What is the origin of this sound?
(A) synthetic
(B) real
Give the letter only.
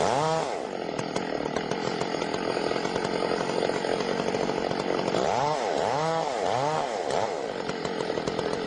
B